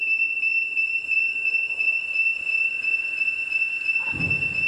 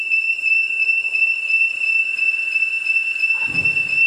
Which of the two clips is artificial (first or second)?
second